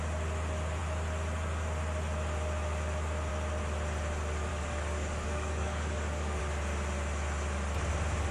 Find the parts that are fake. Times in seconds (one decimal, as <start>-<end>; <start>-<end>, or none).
4.5-6.4